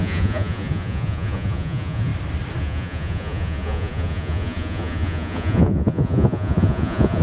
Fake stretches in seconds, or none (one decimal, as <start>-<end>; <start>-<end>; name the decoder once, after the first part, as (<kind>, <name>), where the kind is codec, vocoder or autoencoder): 0.0-2.1 (vocoder, Vocos); 2.6-7.2